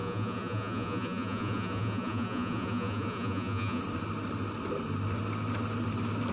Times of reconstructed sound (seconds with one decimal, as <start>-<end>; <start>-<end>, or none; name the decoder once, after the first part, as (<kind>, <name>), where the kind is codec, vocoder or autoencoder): 0.0-3.8 (vocoder, Vocos)

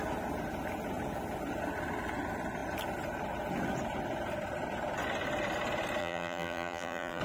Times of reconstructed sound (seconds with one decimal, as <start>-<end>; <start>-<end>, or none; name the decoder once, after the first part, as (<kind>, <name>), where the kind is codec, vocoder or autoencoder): 6.0-7.2 (vocoder, BigVGAN v2)